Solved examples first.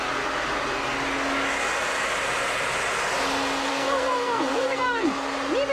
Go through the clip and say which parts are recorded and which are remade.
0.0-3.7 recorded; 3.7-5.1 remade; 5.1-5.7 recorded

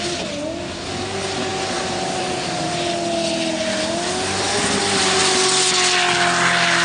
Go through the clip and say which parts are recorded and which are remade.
0.0-6.8 recorded

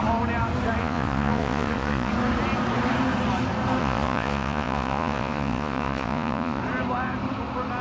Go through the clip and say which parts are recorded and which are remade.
0.0-0.8 recorded; 0.8-2.1 remade; 2.1-3.8 recorded; 3.8-6.6 remade; 6.6-7.8 recorded